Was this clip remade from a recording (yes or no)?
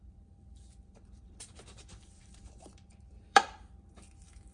yes